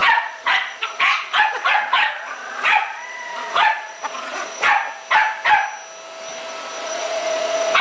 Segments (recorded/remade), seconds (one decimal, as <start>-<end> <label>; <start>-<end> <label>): 0.0-4.7 remade; 4.7-6.8 recorded; 6.8-7.8 remade